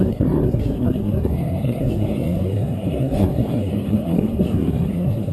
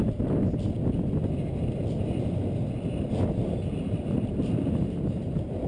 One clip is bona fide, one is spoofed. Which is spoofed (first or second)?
first